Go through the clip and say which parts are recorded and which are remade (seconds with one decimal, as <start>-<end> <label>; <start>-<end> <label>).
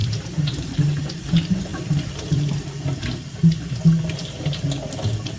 0.0-1.0 remade; 1.0-1.7 recorded; 1.7-2.5 remade; 2.5-5.4 recorded